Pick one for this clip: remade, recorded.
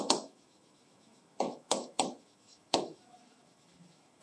remade